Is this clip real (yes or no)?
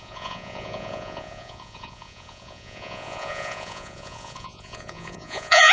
no